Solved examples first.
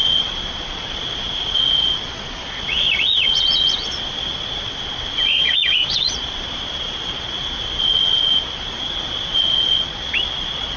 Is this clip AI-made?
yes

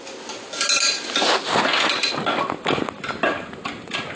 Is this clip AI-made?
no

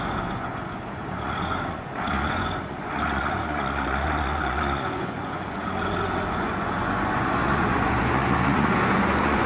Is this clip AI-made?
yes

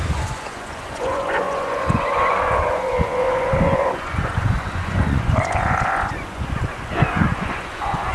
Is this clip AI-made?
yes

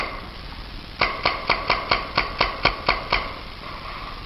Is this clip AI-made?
no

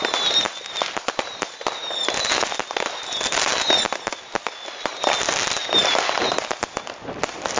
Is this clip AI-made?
no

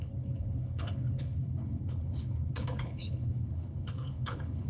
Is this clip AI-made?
yes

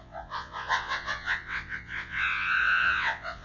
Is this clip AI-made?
yes